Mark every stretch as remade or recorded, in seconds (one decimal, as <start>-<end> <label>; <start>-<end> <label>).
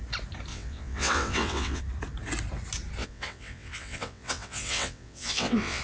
0.0-0.5 recorded; 0.5-1.8 remade; 1.8-3.0 recorded; 3.0-5.8 remade